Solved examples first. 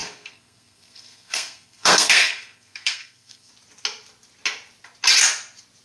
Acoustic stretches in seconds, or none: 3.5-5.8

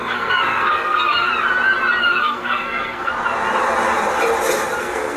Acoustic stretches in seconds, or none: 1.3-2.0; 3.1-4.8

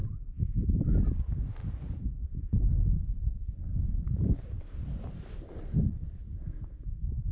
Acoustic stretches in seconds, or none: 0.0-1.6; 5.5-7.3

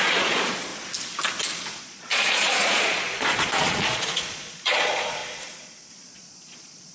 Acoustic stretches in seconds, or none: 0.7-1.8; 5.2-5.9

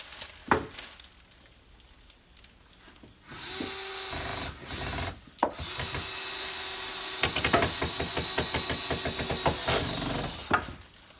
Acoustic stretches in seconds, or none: 0.0-11.2